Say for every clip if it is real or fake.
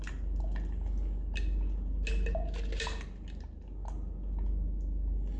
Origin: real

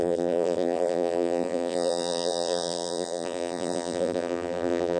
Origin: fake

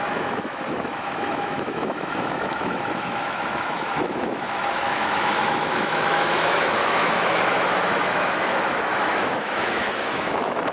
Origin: fake